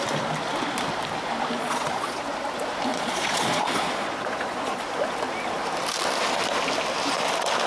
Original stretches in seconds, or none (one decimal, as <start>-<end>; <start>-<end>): 0.0-1.6; 2.2-2.9; 4.8-7.7